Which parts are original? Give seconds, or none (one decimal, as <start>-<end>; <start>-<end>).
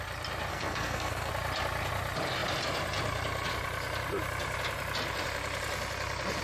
0.0-0.5; 1.3-6.4